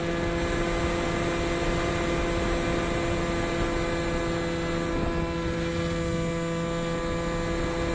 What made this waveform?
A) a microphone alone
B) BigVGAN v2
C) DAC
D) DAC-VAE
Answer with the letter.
A